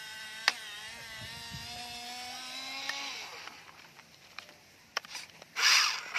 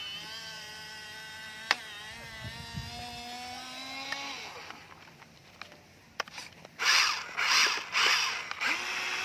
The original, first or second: second